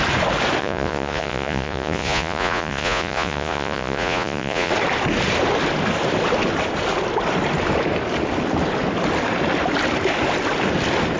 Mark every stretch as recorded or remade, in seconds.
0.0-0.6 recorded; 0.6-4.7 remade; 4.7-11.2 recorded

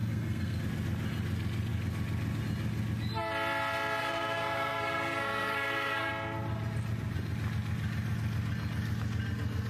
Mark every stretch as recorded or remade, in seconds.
0.0-0.6 remade; 0.6-4.0 recorded; 4.0-6.1 remade; 6.1-9.7 recorded

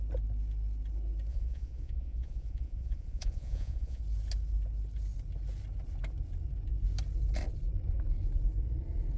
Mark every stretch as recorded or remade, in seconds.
0.0-1.3 recorded; 1.3-4.0 remade; 4.0-9.2 recorded

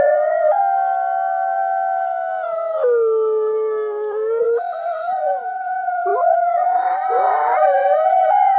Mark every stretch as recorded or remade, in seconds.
0.0-0.6 remade; 0.6-4.4 recorded; 4.4-8.6 remade

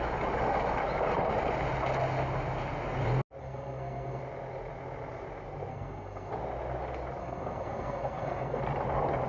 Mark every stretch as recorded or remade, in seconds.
0.0-3.4 recorded; 3.4-4.2 remade; 4.2-5.7 recorded; 5.7-6.3 remade; 6.3-7.2 recorded; 7.2-8.6 remade; 8.6-9.3 recorded

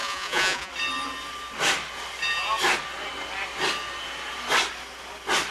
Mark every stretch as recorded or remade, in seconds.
0.0-0.7 remade; 0.7-5.5 recorded